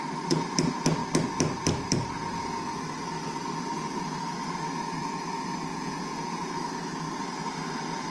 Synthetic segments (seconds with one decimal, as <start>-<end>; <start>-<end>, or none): 5.7-6.5